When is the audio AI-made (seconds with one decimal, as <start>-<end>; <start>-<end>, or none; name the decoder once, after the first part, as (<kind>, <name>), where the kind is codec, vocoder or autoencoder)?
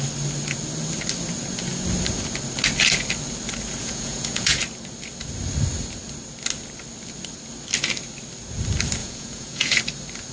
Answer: 3.8-4.6 (vocoder, Vocos); 9.0-9.8